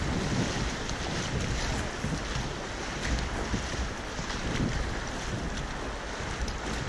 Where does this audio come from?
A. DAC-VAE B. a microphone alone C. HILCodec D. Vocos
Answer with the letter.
B